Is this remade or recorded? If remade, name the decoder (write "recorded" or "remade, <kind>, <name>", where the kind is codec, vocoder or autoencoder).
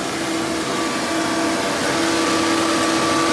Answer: recorded